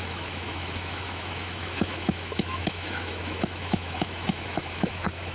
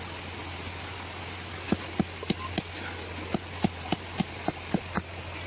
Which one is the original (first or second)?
second